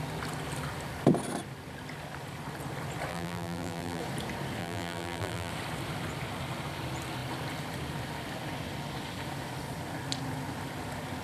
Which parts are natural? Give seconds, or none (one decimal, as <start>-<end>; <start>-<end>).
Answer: 0.0-3.1; 4.0-4.6; 5.5-11.2